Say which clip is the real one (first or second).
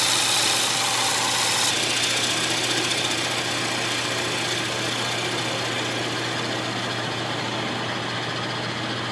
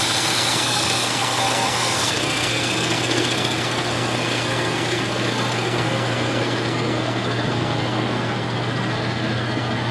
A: first